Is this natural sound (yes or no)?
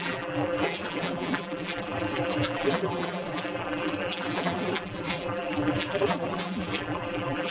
no